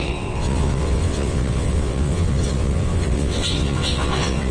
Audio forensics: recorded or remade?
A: remade